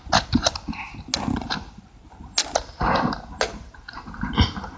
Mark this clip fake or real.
real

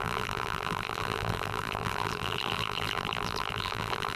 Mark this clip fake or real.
fake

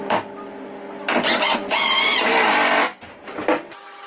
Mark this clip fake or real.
real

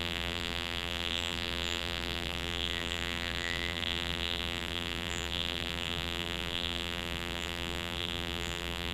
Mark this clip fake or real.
fake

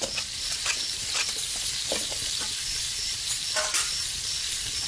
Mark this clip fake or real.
fake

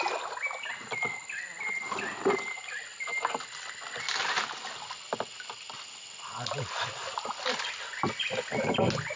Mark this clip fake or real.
real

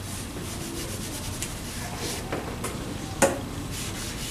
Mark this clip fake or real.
real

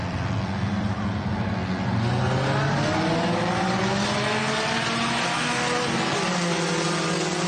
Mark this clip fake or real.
real